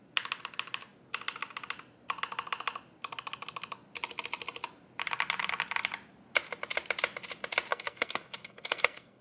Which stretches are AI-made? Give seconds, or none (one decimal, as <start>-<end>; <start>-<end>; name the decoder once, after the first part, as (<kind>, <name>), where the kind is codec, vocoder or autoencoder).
7.7-9.2 (codec, SNAC)